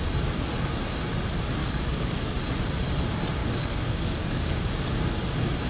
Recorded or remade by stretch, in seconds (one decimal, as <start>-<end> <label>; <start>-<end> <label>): 0.0-1.6 recorded; 1.6-2.3 remade; 2.3-3.4 recorded; 3.4-4.7 remade; 4.7-5.7 recorded